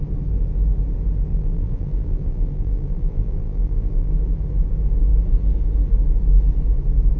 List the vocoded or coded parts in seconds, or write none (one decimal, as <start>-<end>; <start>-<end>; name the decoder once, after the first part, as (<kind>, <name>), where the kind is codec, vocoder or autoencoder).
1.3-4.1 (vocoder, BigVGAN v2)